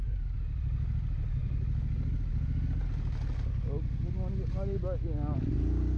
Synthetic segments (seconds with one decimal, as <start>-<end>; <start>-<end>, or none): none